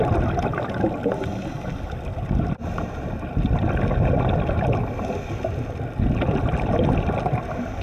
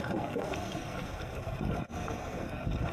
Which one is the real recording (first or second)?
first